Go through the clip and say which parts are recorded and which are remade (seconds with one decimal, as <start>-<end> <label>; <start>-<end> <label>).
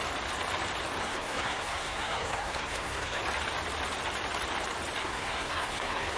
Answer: 0.0-1.0 recorded; 1.0-3.2 remade; 3.2-5.0 recorded; 5.0-6.2 remade